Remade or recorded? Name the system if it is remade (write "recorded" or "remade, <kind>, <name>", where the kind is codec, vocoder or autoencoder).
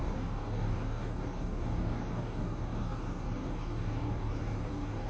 remade, codec, DAC